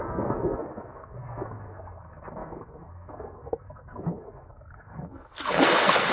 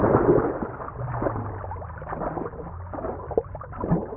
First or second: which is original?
second